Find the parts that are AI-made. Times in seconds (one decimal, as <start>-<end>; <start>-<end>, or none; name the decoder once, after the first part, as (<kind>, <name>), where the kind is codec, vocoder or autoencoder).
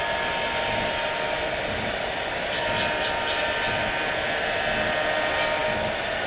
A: none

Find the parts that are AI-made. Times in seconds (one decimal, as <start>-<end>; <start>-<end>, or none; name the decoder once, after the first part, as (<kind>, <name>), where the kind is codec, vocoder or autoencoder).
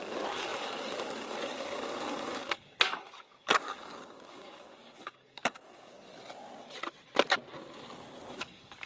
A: 0.0-6.1 (codec, DAC); 8.3-8.9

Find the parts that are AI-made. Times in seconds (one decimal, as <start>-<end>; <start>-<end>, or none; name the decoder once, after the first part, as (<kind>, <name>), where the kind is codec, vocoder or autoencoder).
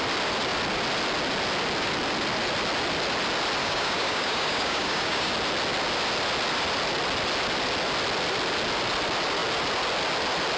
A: 3.6-5.3 (codec, DAC)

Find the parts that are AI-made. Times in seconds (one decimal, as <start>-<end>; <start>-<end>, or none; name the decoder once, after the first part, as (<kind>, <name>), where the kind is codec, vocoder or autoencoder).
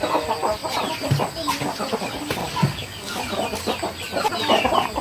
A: 2.4-3.2 (codec, DAC)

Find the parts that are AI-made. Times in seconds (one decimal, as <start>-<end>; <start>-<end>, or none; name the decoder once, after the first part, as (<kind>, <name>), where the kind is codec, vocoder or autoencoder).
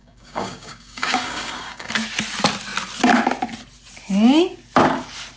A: 0.0-1.9 (codec, DAC)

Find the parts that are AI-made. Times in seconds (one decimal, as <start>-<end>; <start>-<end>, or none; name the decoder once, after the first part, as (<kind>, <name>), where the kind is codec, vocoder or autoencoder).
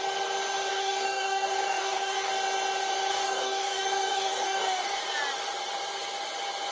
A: 0.7-2.3 (codec, DAC); 3.1-5.0